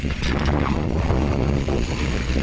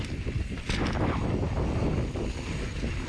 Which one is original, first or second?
second